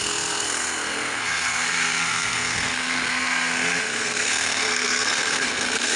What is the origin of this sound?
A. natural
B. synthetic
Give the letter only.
B